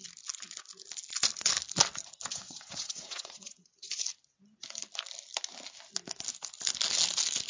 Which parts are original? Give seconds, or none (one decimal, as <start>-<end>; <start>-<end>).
0.0-2.3; 4.0-7.5